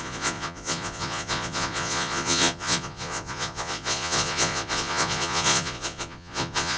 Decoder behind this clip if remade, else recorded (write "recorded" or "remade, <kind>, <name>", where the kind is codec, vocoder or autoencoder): remade, vocoder, Vocos